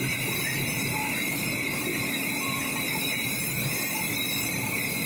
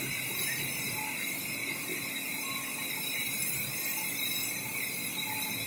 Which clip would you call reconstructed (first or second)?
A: first